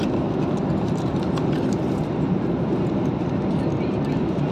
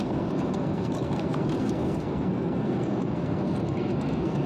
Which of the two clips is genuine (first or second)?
first